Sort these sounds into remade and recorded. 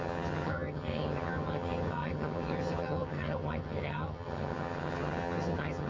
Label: remade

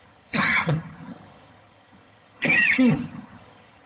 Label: remade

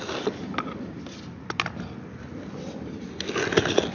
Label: recorded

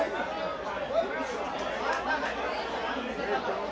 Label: recorded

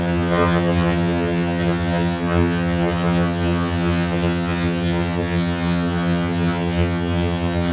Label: remade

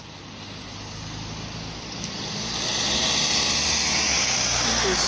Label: recorded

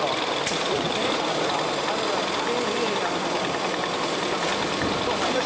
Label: recorded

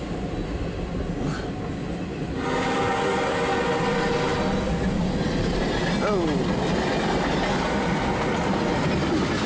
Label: recorded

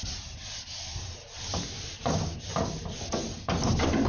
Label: recorded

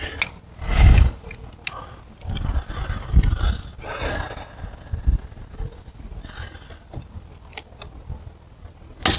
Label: recorded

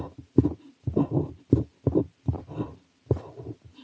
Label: recorded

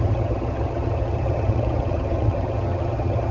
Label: remade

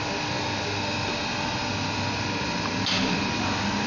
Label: recorded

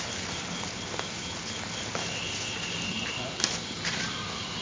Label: recorded